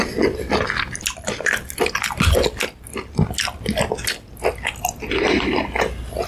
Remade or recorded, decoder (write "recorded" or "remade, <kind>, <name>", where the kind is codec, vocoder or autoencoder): recorded